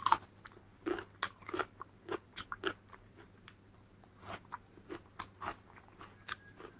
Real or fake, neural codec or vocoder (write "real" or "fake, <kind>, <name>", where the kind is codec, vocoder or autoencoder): real